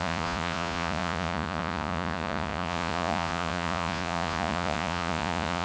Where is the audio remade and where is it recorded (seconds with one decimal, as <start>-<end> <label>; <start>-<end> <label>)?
0.0-5.6 remade